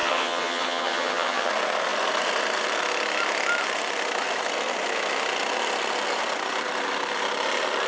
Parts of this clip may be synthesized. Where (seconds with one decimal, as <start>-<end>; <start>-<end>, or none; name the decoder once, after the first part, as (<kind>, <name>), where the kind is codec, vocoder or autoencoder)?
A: 0.0-1.5 (vocoder, HiFi-GAN)